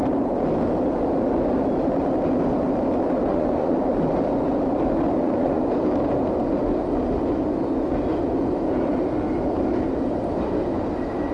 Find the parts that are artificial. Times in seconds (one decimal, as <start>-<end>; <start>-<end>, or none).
3.3-3.9; 5.2-5.7